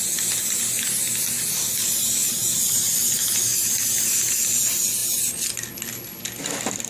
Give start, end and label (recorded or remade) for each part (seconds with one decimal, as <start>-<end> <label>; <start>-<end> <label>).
0.0-6.9 recorded